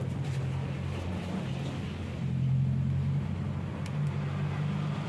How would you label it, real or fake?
real